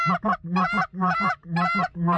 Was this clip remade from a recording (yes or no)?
no